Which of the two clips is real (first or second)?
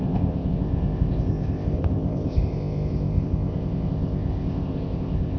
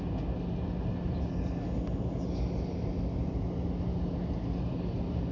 second